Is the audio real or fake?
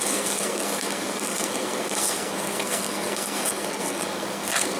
fake